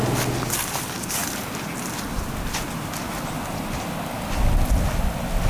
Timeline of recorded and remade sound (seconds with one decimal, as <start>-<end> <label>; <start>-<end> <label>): 0.0-5.5 recorded